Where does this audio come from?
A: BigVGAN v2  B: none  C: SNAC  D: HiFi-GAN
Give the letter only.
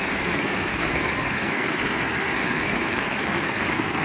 C